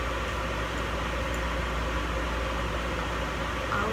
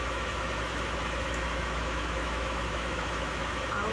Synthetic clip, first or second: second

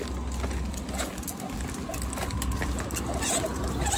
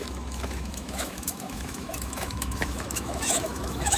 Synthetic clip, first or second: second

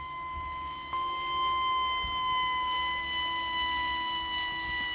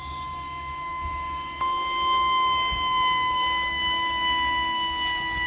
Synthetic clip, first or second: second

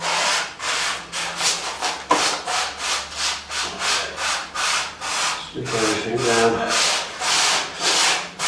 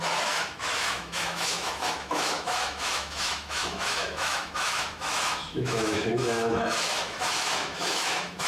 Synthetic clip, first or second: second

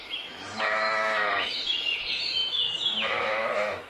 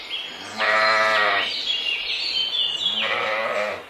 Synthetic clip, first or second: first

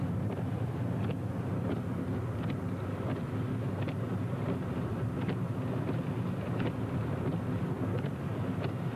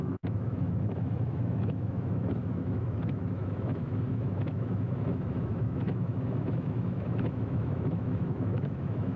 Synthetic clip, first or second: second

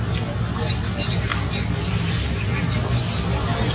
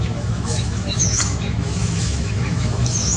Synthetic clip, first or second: second